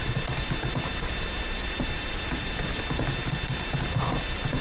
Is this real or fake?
fake